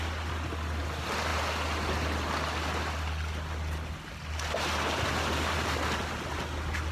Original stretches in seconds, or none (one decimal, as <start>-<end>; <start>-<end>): 0.0-6.9